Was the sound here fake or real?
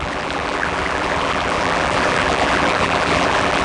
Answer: fake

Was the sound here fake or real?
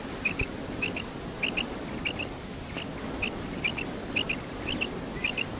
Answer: real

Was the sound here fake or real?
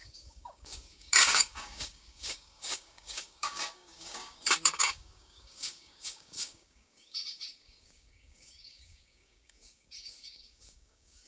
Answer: fake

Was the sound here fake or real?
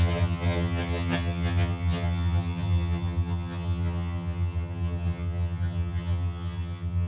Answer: fake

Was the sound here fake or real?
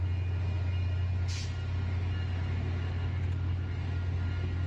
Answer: real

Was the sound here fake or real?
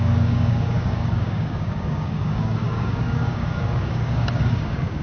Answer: fake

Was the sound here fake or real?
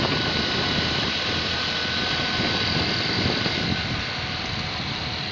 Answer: real